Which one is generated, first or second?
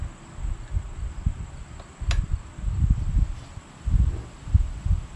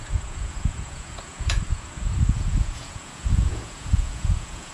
second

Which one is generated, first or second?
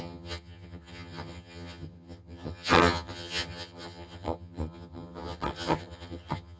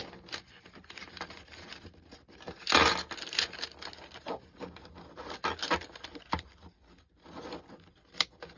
first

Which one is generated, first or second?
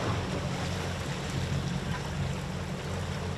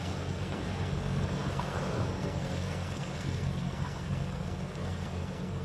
second